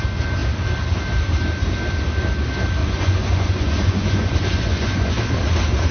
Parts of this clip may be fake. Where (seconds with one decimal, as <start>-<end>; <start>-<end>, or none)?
2.8-5.1

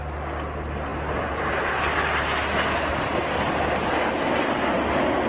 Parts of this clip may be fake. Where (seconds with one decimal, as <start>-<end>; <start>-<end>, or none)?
none

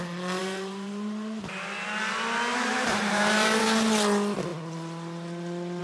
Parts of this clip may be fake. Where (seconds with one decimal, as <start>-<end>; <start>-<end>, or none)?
0.4-1.5; 2.5-3.6

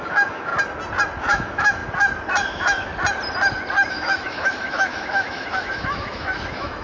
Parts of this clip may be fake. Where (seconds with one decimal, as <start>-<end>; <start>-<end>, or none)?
0.0-0.5; 1.2-1.8; 2.5-2.9; 3.9-6.8

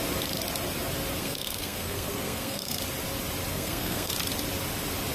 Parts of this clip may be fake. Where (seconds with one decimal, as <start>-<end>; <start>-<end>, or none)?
1.2-2.8; 3.5-4.1